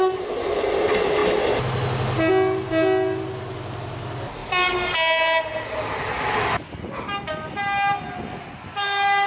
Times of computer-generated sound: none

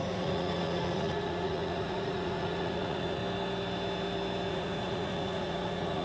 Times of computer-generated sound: 0.0-3.2 (vocoder, Vocos); 4.5-6.0

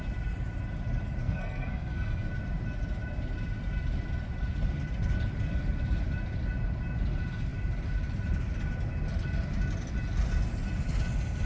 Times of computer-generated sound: 1.2-2.3 (codec, SNAC)

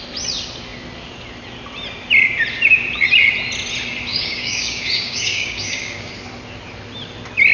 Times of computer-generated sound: 4.1-6.1 (codec, DAC)

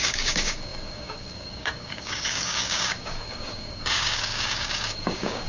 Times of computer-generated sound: 0.0-5.5 (codec, DAC)

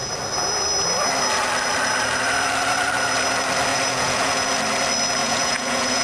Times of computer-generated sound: 3.7-4.5 (vocoder, Vocos); 5.2-6.0